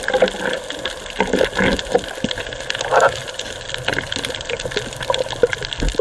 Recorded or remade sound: recorded